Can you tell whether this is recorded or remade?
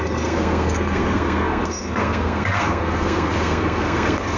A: remade